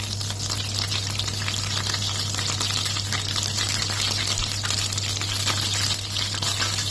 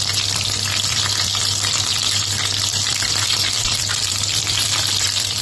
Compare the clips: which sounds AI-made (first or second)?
second